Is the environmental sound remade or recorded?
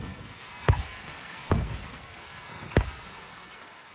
remade